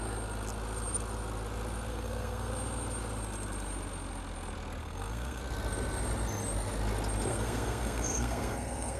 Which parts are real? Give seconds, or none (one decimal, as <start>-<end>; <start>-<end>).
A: 0.0-1.9; 2.5-4.8; 5.4-7.3